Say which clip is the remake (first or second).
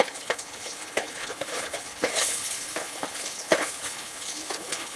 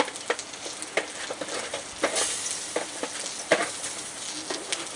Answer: first